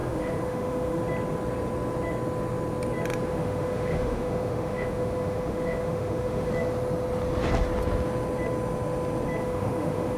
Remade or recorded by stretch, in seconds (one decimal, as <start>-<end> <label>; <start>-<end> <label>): 0.0-1.0 remade; 1.0-3.3 recorded; 3.3-6.5 remade; 6.5-9.4 recorded; 9.4-10.2 remade